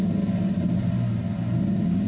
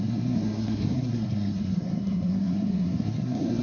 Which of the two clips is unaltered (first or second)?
first